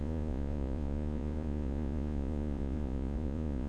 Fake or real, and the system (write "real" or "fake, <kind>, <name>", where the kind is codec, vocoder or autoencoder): fake, vocoder, Vocos